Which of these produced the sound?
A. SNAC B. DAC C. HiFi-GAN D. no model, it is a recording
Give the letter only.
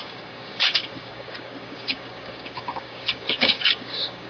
B